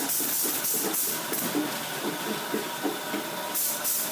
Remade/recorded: recorded